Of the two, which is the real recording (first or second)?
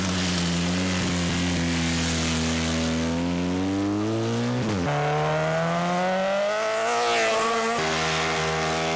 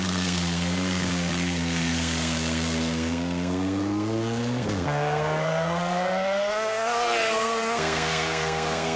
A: first